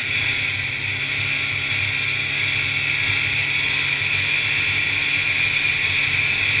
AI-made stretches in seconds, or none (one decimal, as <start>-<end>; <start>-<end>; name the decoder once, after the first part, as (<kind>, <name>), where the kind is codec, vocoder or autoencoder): none